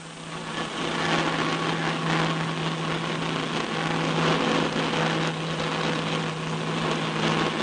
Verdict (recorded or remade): recorded